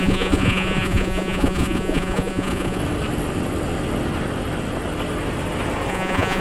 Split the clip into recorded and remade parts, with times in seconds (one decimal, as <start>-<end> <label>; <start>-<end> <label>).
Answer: 0.0-2.8 remade; 2.8-5.9 recorded; 5.9-6.4 remade